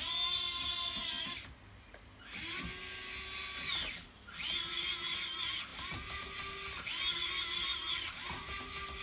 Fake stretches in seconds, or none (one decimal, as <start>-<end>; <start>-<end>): 7.7-8.6

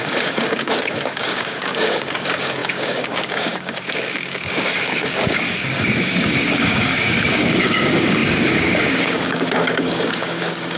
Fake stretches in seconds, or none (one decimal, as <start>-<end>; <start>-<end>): 0.0-10.8

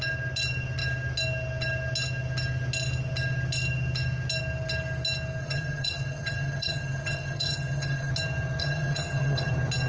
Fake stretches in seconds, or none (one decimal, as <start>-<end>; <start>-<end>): 5.4-8.1; 8.6-9.5

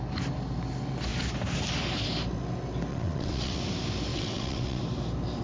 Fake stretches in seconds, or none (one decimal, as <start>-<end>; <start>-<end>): 2.9-3.6; 4.1-4.8

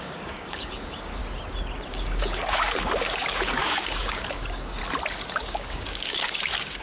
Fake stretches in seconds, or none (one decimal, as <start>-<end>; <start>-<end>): 0.0-1.2; 1.9-4.8; 5.4-6.8